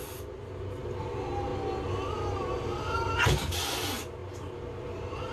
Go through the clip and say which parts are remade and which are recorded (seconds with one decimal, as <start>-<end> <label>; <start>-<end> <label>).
0.0-5.3 recorded